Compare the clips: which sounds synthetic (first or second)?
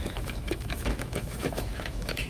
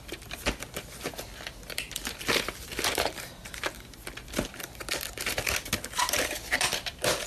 first